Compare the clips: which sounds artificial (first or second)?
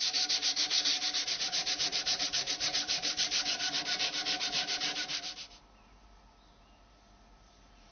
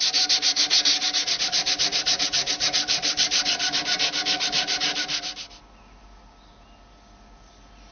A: first